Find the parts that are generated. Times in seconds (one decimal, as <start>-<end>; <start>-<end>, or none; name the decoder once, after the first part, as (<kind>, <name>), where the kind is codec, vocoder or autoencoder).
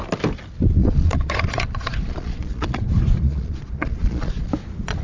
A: 0.8-2.8 (vocoder, Vocos); 3.2-4.5